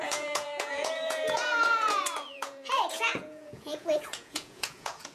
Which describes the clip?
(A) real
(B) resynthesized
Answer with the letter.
B